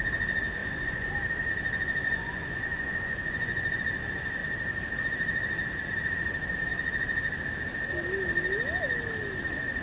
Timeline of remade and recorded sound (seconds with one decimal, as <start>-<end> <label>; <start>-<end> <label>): 0.0-0.6 recorded; 0.6-1.1 remade; 1.1-2.0 recorded; 2.0-3.8 remade; 3.8-9.8 recorded